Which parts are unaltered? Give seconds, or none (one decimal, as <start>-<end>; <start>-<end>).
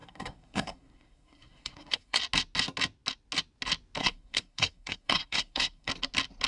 2.2-4.0; 5.9-6.5